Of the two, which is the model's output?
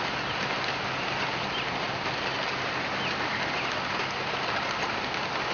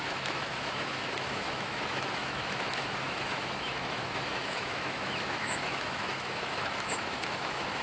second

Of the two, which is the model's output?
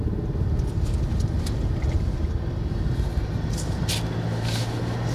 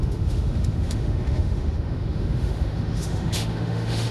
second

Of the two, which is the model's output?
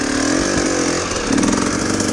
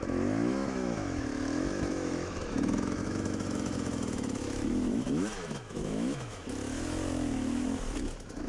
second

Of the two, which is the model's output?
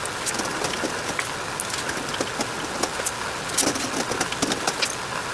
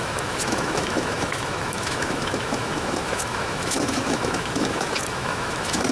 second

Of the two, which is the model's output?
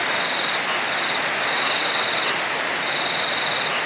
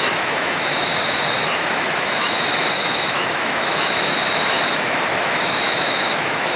second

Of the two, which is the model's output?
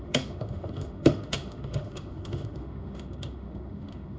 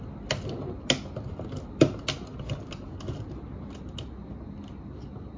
first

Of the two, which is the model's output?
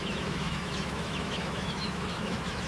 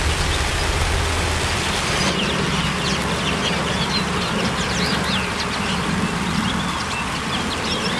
first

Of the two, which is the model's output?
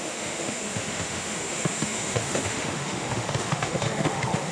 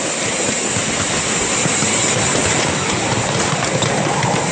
first